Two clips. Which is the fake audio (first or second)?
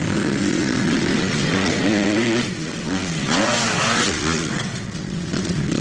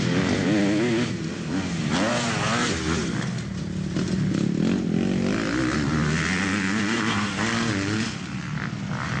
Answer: first